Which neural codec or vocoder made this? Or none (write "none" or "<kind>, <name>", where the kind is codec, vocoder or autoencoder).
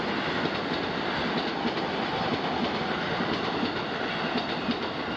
none